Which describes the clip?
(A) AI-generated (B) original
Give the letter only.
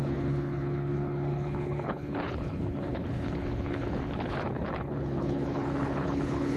A